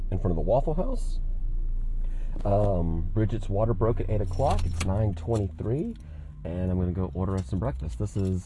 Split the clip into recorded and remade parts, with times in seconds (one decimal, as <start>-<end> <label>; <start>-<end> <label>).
0.0-8.5 recorded